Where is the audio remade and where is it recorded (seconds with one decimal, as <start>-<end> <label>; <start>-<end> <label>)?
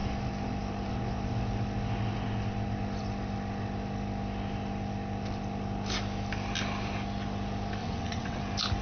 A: 0.0-7.8 recorded; 7.8-8.4 remade; 8.4-8.8 recorded